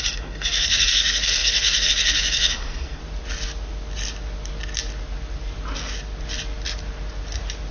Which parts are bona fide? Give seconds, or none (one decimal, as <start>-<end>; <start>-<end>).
3.0-7.7